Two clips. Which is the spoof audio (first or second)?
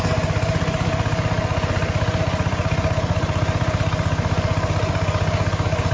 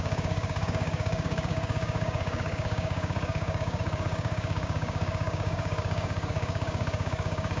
second